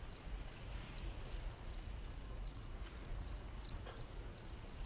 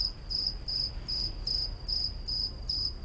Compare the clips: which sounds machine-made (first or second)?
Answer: first